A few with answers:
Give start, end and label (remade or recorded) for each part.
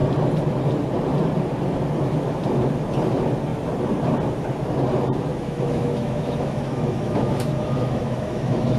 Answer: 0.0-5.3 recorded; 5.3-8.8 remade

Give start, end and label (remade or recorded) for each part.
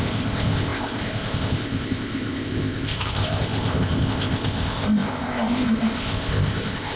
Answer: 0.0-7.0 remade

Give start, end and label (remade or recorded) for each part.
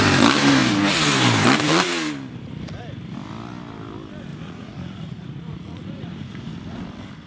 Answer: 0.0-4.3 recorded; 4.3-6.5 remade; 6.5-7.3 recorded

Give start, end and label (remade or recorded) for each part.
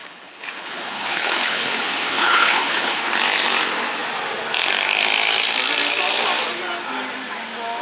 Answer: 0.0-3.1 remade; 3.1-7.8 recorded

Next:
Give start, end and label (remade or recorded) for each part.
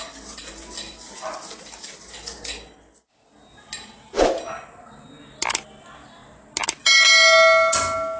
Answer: 0.0-8.2 recorded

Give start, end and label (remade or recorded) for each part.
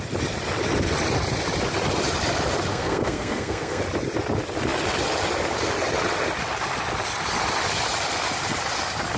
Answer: 0.0-2.7 recorded; 2.7-3.8 remade; 3.8-9.2 recorded